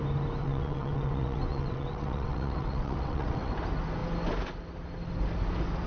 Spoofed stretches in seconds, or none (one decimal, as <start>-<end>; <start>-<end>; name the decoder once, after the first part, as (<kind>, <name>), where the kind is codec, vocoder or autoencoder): 0.4-3.5 (vocoder, WaveNeXt)